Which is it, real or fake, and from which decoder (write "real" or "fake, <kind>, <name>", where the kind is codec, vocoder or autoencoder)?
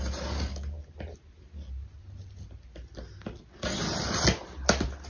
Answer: real